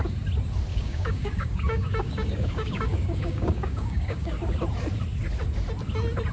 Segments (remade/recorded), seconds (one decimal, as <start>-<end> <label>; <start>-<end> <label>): 0.0-0.7 recorded; 0.7-4.3 remade; 4.3-6.3 recorded